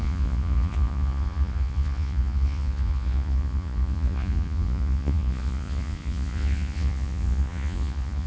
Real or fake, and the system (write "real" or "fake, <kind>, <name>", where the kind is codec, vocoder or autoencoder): fake, vocoder, Vocos